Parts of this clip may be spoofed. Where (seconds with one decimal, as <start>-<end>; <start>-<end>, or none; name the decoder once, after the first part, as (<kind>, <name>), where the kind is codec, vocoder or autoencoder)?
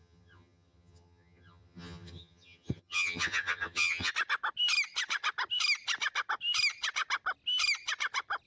0.0-4.1 (vocoder, HiFi-GAN)